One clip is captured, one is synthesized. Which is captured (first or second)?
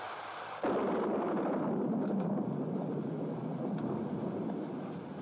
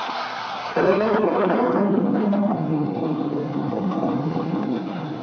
first